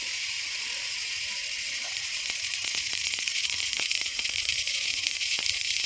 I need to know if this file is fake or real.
fake